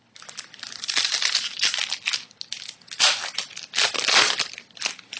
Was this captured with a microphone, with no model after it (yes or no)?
yes